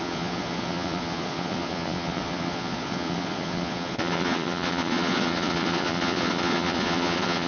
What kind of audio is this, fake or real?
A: fake